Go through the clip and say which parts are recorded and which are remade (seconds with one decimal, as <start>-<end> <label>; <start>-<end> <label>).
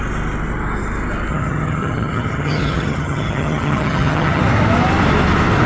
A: 0.0-1.3 recorded; 1.3-4.4 remade; 4.4-5.7 recorded